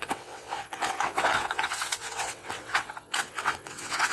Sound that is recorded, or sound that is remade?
remade